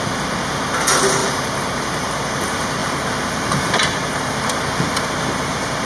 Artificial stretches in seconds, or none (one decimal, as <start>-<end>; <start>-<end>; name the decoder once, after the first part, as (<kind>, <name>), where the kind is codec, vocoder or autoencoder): 1.2-2.1 (vocoder, BigVGAN v2)

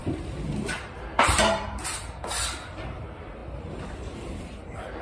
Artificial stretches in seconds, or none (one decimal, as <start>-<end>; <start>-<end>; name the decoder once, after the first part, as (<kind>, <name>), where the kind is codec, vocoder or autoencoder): 0.0-5.0 (vocoder, BigVGAN v2)

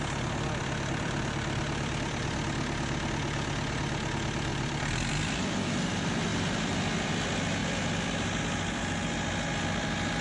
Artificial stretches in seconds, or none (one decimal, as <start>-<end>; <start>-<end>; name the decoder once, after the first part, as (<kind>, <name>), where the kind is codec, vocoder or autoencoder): 0.6-2.4 (vocoder, BigVGAN v2); 4.5-5.6; 6.3-7.1

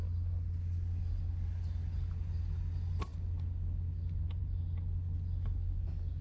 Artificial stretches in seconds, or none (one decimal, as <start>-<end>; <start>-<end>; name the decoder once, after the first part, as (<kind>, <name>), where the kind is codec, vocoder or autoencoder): none

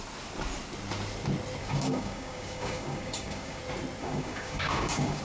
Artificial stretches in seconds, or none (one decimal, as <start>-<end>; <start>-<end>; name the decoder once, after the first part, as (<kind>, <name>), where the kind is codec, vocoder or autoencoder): 1.6-3.6 (codec, DAC); 4.0-5.2

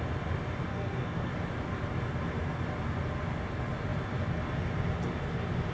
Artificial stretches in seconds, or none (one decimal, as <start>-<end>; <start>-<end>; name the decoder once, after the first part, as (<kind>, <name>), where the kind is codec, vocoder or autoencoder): 0.7-1.3 (codec, SNAC)